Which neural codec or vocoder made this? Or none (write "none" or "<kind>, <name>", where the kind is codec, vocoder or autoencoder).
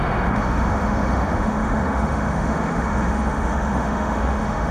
autoencoder, DAC-VAE